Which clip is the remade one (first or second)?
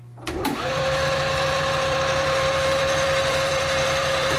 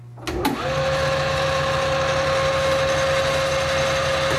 first